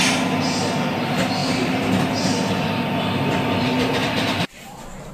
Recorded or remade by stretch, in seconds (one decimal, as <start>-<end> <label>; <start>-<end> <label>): 0.0-1.4 recorded; 1.4-2.1 remade; 2.1-4.0 recorded; 4.0-5.1 remade